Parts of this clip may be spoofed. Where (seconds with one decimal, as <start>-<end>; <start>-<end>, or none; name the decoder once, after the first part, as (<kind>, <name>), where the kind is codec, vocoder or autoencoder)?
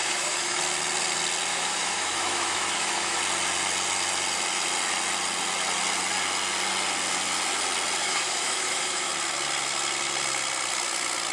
0.0-0.6 (autoencoder, DAC-VAE); 1.5-3.2; 8.0-9.1